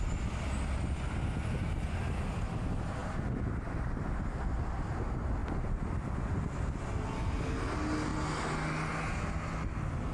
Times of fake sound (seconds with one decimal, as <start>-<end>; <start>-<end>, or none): 3.0-4.0